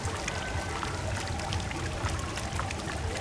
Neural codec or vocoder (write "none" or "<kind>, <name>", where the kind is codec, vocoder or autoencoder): none